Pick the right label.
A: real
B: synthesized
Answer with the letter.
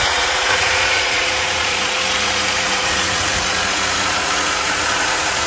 B